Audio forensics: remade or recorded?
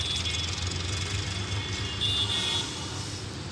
recorded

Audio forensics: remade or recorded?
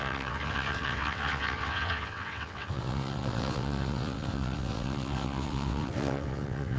remade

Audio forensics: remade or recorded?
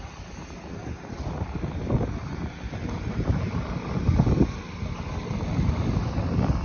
recorded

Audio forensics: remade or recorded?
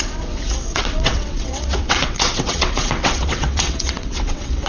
remade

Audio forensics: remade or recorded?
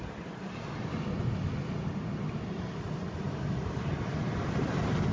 recorded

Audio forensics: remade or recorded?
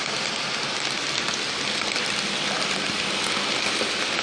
recorded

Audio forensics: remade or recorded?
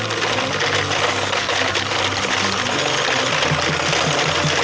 recorded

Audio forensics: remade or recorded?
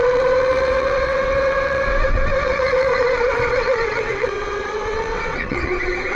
remade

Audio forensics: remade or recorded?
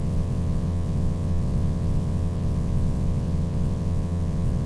remade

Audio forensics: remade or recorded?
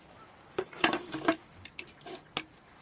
recorded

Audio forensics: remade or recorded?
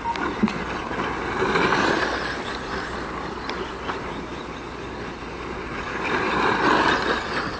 recorded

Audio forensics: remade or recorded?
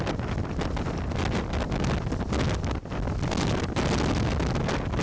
recorded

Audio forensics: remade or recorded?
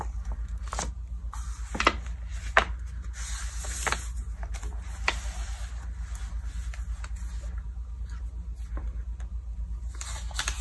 recorded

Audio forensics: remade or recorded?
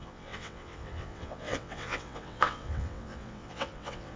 remade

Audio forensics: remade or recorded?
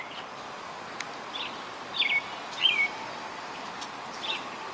recorded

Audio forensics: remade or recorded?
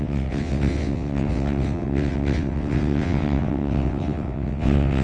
remade